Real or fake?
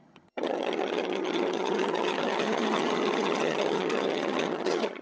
fake